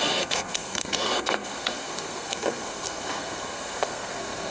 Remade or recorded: remade